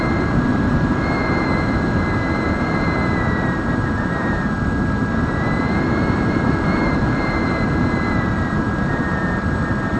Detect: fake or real fake